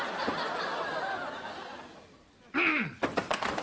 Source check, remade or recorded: recorded